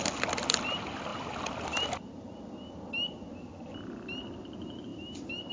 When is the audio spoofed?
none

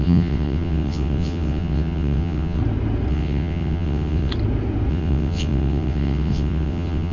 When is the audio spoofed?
0.0-2.6 (vocoder, WaveNeXt); 3.1-4.3; 4.9-7.1

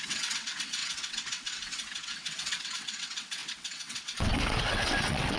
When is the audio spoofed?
0.0-5.4 (vocoder, WaveNeXt)

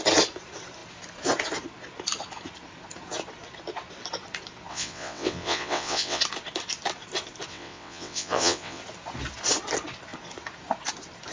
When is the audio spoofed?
4.7-6.2 (vocoder, WaveNeXt); 7.5-8.8

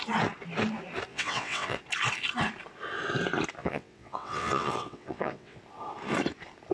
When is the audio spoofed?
1.1-1.8 (vocoder, WaveNeXt); 3.6-5.6

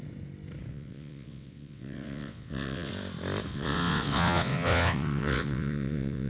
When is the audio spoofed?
0.7-2.9 (vocoder, WaveNeXt); 3.5-6.3

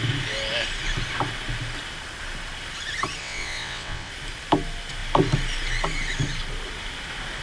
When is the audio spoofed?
3.2-4.1 (vocoder, WaveNeXt)